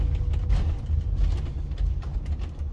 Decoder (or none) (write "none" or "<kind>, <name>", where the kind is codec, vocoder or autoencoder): none